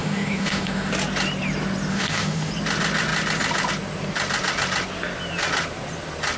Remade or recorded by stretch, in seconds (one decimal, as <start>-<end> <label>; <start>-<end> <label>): 0.0-0.9 remade; 0.9-1.9 recorded; 1.9-2.5 remade; 2.5-6.4 recorded